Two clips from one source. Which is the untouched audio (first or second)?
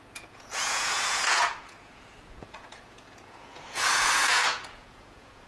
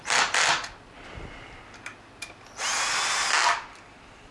second